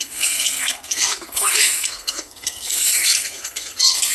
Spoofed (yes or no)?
yes